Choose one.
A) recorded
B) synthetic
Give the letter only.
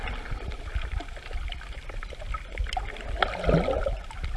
A